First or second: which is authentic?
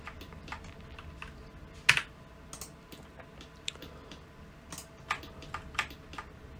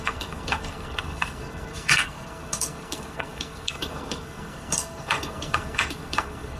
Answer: first